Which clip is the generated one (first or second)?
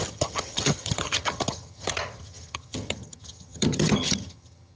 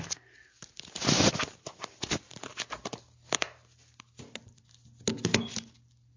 first